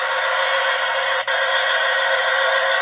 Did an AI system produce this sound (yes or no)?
no